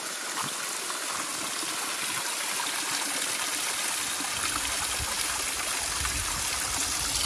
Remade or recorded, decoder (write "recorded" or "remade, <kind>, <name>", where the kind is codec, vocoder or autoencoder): recorded